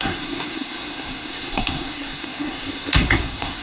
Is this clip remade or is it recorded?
remade